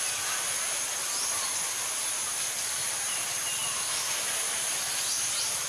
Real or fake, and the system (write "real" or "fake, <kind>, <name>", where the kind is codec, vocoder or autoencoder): real